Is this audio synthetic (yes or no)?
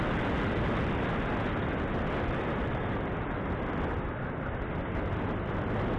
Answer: no